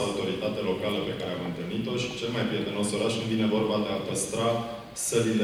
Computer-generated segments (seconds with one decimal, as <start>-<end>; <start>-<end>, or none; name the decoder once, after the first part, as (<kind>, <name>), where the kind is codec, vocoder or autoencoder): none

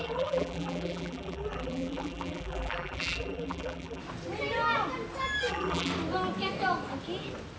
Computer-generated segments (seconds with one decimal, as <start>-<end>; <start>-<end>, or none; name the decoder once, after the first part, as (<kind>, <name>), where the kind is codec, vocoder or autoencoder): 0.0-4.0 (vocoder, BigVGAN v2); 5.5-5.9

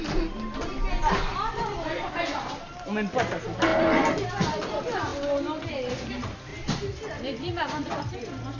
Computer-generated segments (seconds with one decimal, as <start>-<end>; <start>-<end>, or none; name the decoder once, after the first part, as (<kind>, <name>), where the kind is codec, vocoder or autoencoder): 1.3-2.2 (vocoder, BigVGAN v2); 3.7-4.3; 6.5-8.0

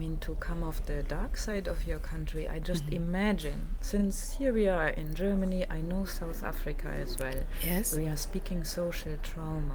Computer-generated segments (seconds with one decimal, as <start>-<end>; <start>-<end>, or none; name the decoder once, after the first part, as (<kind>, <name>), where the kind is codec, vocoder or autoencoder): 1.2-1.7 (vocoder, BigVGAN v2)